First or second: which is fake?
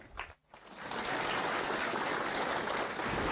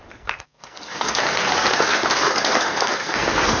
second